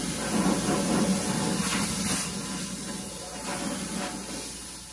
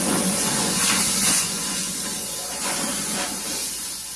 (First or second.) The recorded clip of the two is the first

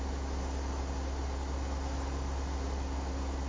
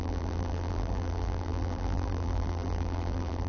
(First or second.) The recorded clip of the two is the first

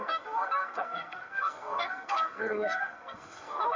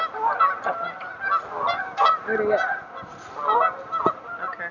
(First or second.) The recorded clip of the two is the second